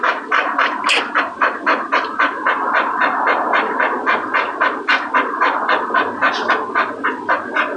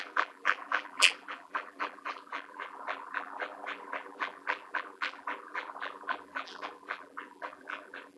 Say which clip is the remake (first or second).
second